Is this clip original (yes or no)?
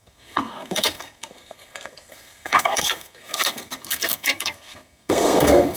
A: no